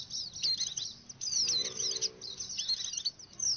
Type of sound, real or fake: real